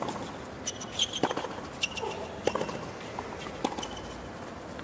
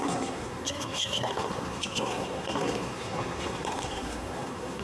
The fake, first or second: second